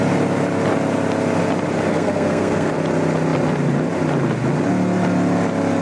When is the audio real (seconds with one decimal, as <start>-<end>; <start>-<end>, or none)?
0.0-1.9; 2.7-5.8